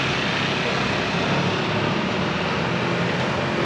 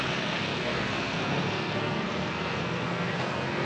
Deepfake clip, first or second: second